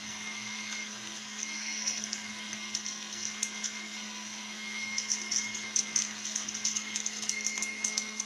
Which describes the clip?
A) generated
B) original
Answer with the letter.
A